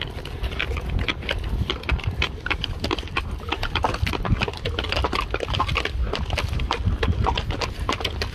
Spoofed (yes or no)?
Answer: no